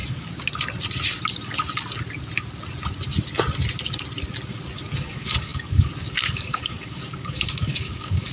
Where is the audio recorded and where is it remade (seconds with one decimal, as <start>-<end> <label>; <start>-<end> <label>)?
0.0-5.0 recorded; 5.0-8.3 remade